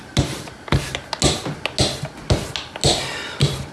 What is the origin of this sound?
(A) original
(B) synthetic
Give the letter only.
A